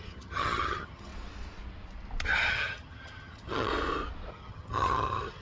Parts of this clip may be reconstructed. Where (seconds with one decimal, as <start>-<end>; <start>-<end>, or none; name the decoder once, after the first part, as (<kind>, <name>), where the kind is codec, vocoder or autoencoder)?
0.0-1.1 (vocoder, HiFi-GAN); 2.5-3.7; 4.3-5.4